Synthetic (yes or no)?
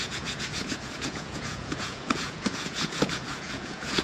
yes